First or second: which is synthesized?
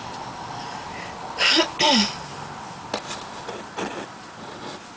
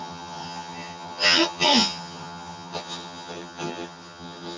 second